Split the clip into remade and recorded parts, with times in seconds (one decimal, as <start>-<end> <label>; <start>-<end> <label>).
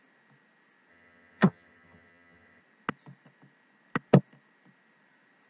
0.0-0.9 recorded; 0.9-2.6 remade; 2.6-5.5 recorded